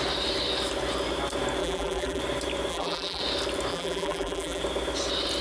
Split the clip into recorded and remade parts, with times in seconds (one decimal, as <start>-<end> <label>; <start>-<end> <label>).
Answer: 0.0-1.6 recorded; 1.6-2.2 remade; 2.2-2.7 recorded; 2.7-3.2 remade; 3.2-3.7 recorded; 3.7-4.6 remade; 4.6-5.4 recorded